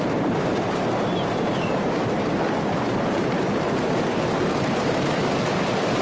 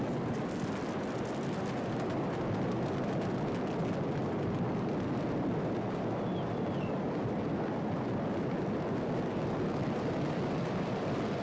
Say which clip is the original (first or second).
second